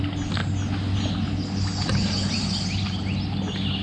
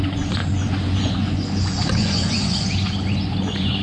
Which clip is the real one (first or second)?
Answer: first